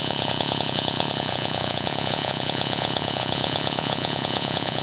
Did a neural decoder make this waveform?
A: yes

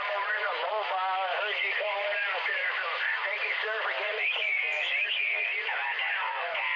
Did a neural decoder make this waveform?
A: yes